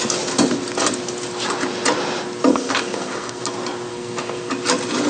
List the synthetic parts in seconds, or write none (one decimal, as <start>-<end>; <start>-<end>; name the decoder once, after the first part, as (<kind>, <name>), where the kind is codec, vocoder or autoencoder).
2.5-3.4 (codec, SNAC); 3.9-4.5